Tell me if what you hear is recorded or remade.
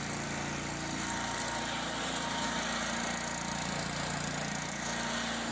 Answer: recorded